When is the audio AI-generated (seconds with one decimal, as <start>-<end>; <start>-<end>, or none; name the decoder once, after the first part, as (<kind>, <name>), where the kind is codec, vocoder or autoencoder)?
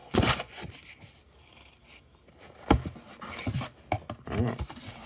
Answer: 0.0-0.7 (vocoder, Vocos)